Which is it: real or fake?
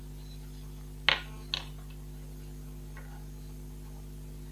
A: real